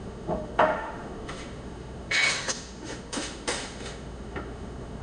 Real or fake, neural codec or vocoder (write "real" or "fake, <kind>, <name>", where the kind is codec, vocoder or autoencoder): fake, autoencoder, DAC-VAE